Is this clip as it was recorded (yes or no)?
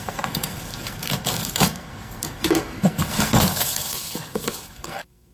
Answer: no